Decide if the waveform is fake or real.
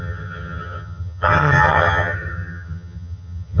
fake